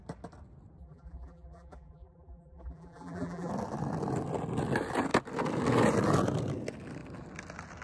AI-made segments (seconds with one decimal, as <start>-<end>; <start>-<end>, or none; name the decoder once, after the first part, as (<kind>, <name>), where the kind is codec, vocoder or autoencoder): 0.8-3.5 (vocoder, BigVGAN v2)